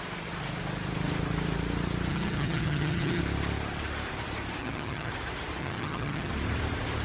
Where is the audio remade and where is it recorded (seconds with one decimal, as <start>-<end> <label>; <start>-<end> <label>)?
0.0-2.1 recorded; 2.1-3.2 remade; 3.2-4.6 recorded; 4.6-5.1 remade; 5.1-5.6 recorded; 5.6-6.3 remade; 6.3-7.0 recorded